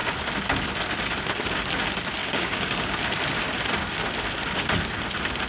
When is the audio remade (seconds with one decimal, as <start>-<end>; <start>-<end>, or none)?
2.2-3.0